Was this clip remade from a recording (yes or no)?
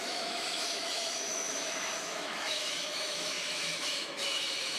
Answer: yes